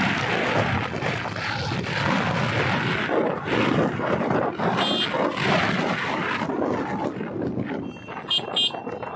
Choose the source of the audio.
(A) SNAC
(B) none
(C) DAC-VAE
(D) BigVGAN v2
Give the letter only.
B